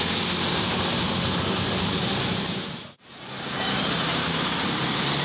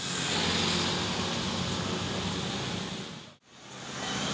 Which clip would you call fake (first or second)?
first